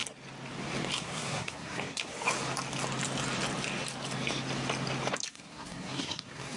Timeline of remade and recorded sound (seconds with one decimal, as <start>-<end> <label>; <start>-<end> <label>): 0.0-1.0 recorded; 1.0-2.1 remade; 2.1-5.3 recorded; 5.3-6.6 remade

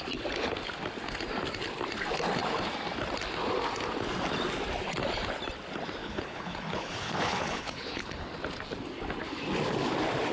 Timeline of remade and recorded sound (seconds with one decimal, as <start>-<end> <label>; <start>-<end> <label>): 0.0-6.0 recorded; 6.0-8.3 remade; 8.3-10.3 recorded

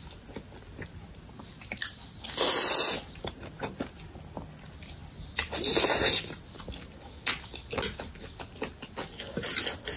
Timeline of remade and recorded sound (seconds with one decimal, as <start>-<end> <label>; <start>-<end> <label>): 0.0-10.0 recorded

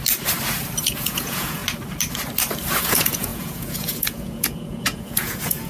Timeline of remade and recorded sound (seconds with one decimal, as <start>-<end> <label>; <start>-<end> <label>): 0.0-0.8 recorded; 0.8-1.6 remade; 1.6-2.8 recorded; 2.8-5.7 remade

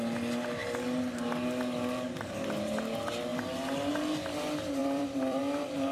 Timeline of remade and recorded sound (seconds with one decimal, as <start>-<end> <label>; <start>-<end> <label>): 0.0-4.8 recorded; 4.8-5.4 remade; 5.4-5.9 recorded